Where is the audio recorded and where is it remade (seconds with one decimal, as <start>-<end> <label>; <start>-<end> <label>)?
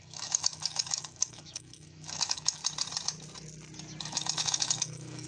0.0-2.6 remade; 2.6-4.0 recorded; 4.0-5.3 remade